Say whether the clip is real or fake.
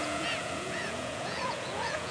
fake